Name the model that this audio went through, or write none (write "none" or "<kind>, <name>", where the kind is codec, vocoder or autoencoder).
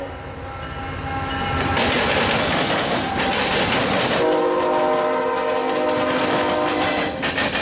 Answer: none